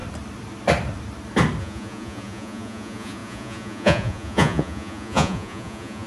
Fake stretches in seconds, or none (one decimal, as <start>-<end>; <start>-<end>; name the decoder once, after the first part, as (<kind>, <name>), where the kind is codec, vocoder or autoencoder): 1.6-6.1 (vocoder, Vocos)